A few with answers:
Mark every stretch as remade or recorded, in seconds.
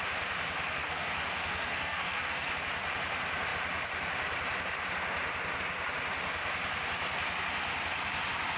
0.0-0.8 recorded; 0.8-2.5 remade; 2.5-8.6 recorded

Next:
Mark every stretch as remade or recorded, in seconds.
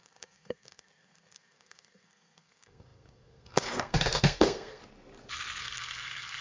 0.0-4.8 remade; 4.8-5.6 recorded; 5.6-6.4 remade